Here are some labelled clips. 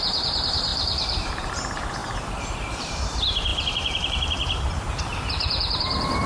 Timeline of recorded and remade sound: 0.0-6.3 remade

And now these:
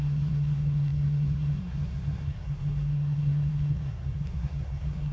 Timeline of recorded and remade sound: 0.0-5.1 remade

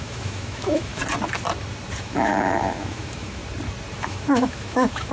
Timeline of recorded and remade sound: 0.0-1.0 remade; 1.0-2.0 recorded; 2.0-3.4 remade; 3.4-4.0 recorded; 4.0-5.1 remade

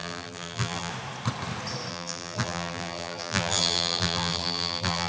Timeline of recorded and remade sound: 0.0-0.9 remade; 0.9-1.9 recorded; 1.9-5.1 remade

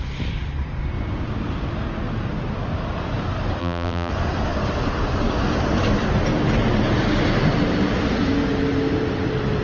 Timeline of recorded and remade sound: 0.0-3.6 recorded; 3.6-4.1 remade; 4.1-9.6 recorded

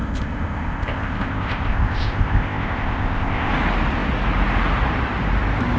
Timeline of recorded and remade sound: 0.0-3.5 remade; 3.5-5.8 recorded